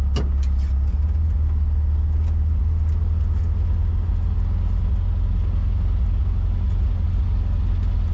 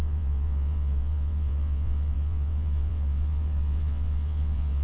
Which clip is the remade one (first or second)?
second